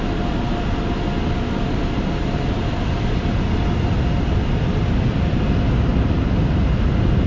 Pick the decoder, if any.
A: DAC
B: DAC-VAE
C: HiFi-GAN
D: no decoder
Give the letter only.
D